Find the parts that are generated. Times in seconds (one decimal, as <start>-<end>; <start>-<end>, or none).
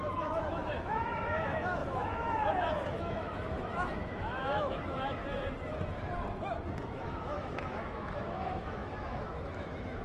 0.0-5.2; 6.9-10.0